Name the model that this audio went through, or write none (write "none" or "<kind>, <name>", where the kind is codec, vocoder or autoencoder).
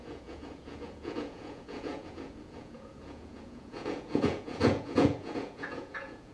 vocoder, Vocos